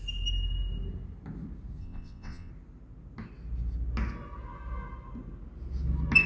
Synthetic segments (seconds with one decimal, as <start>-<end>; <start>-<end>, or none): 1.8-2.5